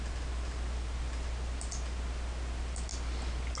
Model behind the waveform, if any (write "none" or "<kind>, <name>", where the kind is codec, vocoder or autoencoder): none